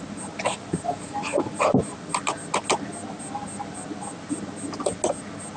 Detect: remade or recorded recorded